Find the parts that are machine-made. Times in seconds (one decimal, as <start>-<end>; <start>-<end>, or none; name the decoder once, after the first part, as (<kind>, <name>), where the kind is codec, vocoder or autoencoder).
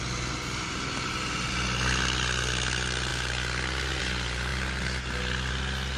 none